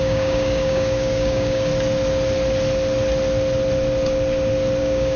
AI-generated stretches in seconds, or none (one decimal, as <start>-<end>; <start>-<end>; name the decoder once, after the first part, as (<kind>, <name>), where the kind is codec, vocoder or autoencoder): 0.0-1.7 (codec, DAC); 4.8-5.2